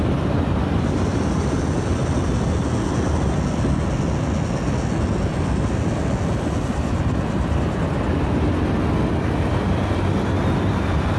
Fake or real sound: real